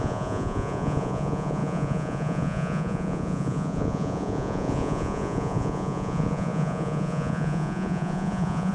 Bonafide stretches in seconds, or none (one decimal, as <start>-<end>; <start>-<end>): none